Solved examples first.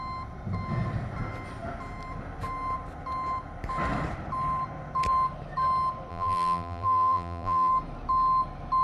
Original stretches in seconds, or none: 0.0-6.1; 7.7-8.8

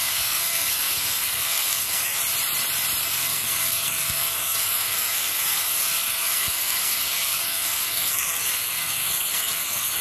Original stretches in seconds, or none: 2.2-3.0

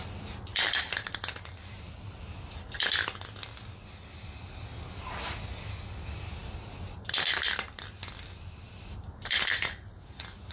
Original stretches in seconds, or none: 0.0-6.4; 9.7-10.5

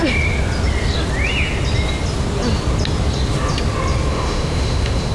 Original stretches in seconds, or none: 0.0-4.1

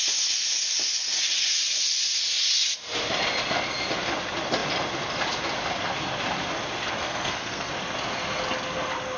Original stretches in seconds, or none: 0.0-7.0; 7.7-9.2